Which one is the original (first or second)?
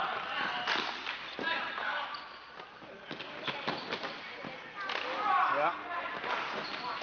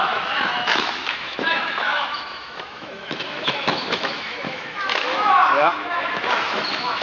first